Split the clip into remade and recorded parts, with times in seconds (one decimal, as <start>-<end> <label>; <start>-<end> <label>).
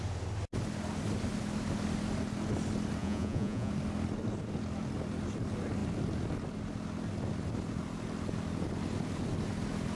0.0-3.0 recorded; 3.0-3.7 remade; 3.7-10.0 recorded